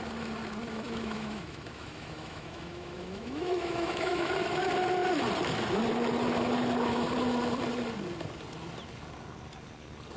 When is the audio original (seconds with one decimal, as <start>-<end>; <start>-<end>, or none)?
0.0-0.7; 4.3-10.2